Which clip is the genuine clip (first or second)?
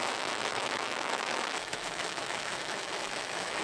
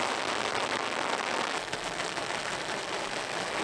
second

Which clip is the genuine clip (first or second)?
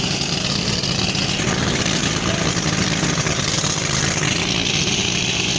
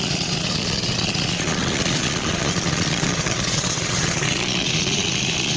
first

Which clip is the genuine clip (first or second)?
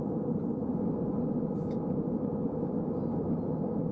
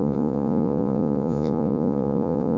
first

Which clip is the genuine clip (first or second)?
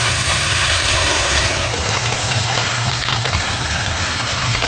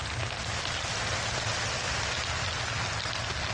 second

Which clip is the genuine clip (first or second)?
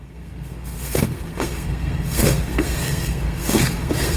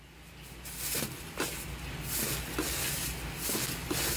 second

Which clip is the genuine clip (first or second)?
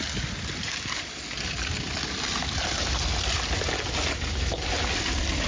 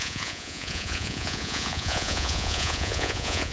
first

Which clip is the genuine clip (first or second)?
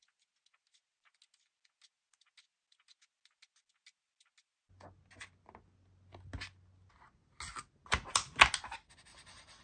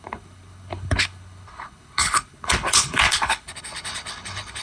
first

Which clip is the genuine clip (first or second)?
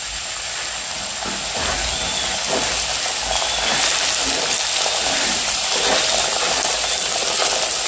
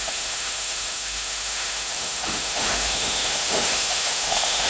first